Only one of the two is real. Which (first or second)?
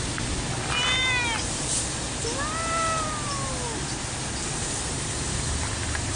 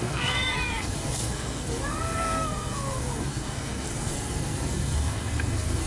first